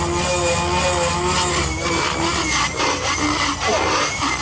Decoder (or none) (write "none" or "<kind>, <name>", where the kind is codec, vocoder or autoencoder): none